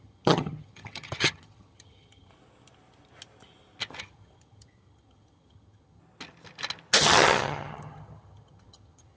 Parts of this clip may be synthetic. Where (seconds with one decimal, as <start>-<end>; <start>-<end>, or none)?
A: 0.0-2.3; 4.0-6.0; 7.0-9.2